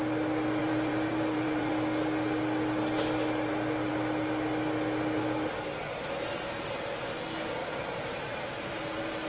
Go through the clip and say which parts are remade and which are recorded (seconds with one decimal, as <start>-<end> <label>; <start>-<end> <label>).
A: 0.0-0.6 recorded; 0.6-1.7 remade; 1.7-7.6 recorded; 7.6-8.8 remade; 8.8-9.3 recorded